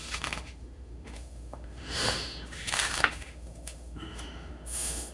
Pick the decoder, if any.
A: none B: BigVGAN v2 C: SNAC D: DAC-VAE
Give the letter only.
D